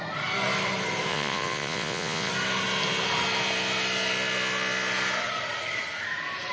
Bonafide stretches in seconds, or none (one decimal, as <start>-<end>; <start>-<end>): 0.0-1.1; 2.3-6.5